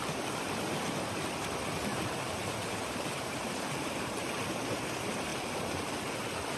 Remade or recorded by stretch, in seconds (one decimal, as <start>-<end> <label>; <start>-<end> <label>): 0.0-1.9 recorded; 1.9-4.4 remade; 4.4-5.3 recorded; 5.3-6.1 remade; 6.1-6.6 recorded